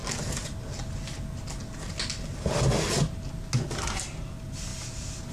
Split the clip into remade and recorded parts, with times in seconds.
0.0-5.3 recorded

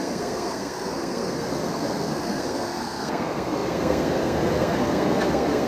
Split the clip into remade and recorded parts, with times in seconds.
0.0-5.7 remade

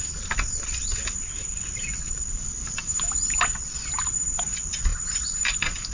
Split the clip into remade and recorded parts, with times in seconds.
0.0-4.9 recorded; 4.9-5.9 remade

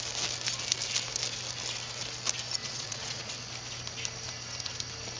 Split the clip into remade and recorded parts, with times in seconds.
0.0-2.6 recorded; 2.6-3.3 remade; 3.3-5.2 recorded

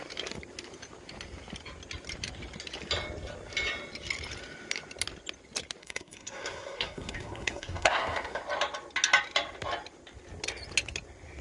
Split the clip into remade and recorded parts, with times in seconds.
0.0-5.8 recorded; 5.8-8.4 remade; 8.4-11.4 recorded

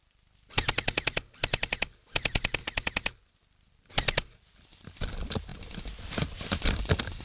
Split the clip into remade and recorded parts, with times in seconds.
0.0-2.6 remade; 2.6-3.3 recorded; 3.3-7.2 remade

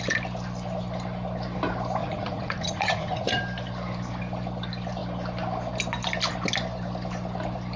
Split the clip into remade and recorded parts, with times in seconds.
0.0-2.0 recorded; 2.0-3.4 remade; 3.4-7.8 recorded